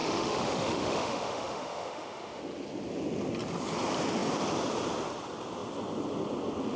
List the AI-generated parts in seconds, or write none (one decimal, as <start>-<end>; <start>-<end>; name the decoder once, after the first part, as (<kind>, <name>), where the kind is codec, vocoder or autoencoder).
0.0-2.4 (autoencoder, DAC-VAE)